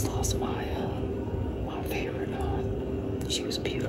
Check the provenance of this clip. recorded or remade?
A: remade